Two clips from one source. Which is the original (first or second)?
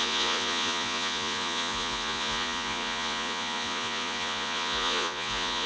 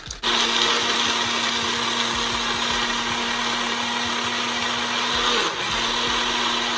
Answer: second